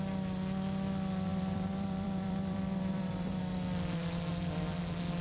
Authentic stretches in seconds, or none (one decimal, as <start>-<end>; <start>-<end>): 0.0-1.3; 3.4-4.3; 4.8-5.2